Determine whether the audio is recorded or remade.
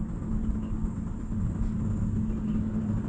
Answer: recorded